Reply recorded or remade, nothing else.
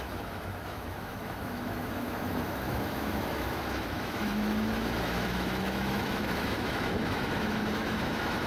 remade